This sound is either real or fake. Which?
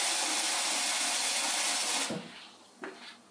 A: real